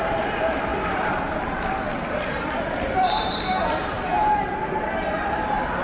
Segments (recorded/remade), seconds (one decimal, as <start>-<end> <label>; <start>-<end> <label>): 0.0-4.1 remade; 4.1-5.8 recorded